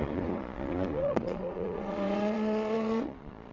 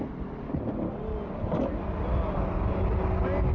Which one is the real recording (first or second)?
second